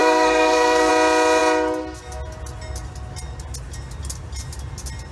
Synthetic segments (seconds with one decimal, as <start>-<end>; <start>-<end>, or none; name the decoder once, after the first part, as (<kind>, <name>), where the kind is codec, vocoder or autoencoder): 0.0-0.9 (codec, SNAC)